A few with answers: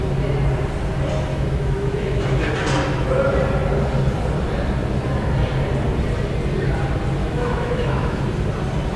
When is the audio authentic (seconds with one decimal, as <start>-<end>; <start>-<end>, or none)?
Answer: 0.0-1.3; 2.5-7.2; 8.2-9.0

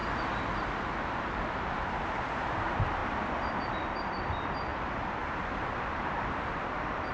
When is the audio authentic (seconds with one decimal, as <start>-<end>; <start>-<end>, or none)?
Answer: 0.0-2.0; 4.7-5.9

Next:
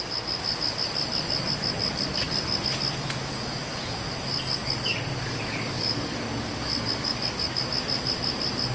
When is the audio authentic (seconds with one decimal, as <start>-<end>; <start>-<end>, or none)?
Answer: 0.0-1.8; 2.8-4.6; 7.6-8.7

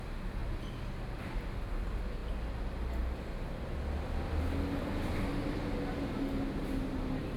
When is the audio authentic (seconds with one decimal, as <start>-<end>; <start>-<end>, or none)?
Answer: 0.0-7.4

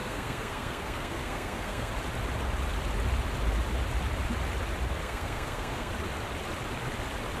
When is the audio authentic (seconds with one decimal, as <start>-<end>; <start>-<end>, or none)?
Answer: 1.9-5.0; 5.9-7.4

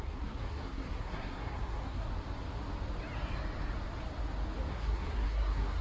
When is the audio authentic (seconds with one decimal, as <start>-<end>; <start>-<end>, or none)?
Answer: 2.1-4.7

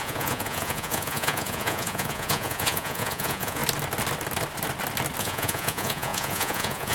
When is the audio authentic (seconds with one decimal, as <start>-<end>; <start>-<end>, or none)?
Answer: 3.6-5.2